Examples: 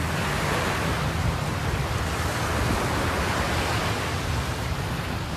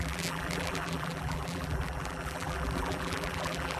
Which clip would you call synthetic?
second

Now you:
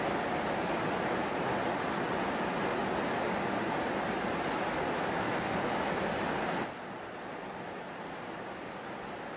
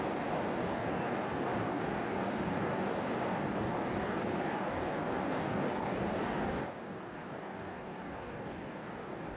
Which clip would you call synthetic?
second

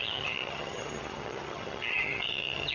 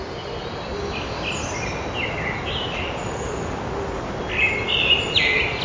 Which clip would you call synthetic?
first